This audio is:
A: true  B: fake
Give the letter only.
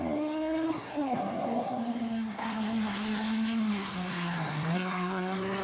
B